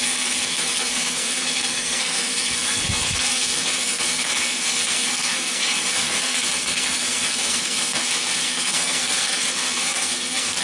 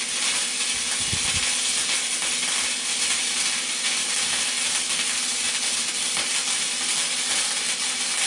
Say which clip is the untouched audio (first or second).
second